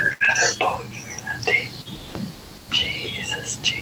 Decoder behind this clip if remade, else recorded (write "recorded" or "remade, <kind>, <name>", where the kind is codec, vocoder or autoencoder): recorded